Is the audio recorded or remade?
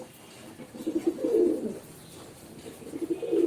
recorded